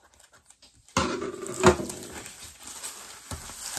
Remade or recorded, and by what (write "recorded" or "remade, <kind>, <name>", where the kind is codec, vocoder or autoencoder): recorded